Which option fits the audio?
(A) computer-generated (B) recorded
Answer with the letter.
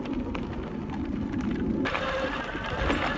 B